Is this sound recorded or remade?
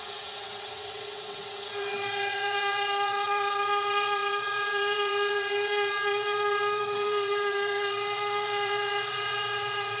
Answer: remade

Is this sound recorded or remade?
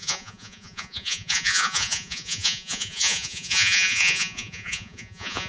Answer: remade